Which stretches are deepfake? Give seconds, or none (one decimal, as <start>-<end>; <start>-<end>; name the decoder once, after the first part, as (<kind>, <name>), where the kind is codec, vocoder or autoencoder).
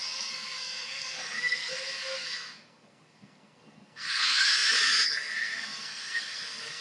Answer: 0.0-6.8 (codec, SNAC)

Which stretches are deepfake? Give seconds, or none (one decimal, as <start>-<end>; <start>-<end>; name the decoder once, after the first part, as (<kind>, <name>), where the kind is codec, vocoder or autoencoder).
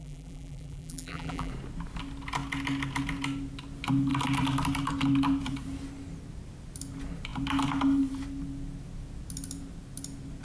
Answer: 0.0-1.5 (vocoder, BigVGAN v2)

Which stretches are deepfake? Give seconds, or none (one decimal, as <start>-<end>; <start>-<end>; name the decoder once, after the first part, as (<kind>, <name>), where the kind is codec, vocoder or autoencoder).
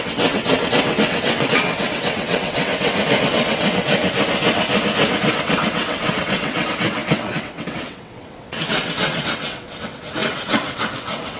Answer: 0.0-2.7 (vocoder, WaveNeXt); 3.2-4.0; 5.3-11.4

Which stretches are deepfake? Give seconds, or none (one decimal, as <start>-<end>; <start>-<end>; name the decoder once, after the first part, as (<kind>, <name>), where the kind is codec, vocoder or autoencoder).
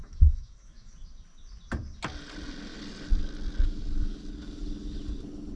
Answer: 0.0-0.9 (autoencoder, DAC-VAE)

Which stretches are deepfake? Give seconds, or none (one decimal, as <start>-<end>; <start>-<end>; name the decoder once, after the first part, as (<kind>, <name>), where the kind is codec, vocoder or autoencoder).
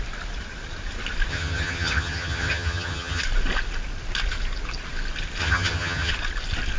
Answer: 1.3-3.2 (vocoder, HiFi-GAN); 5.4-6.1